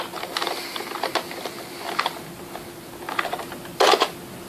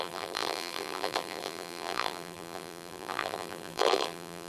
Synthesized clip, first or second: second